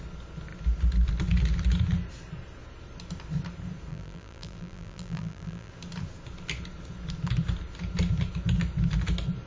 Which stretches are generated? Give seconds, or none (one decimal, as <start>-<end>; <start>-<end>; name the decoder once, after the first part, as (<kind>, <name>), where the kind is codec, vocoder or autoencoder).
3.9-5.7 (vocoder, BigVGAN v2)